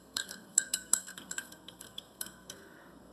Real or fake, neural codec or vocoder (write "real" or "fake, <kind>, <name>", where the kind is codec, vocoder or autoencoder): fake, codec, SNAC